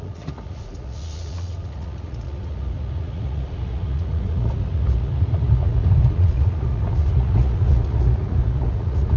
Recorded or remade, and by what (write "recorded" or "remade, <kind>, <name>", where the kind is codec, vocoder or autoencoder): remade, vocoder, Vocos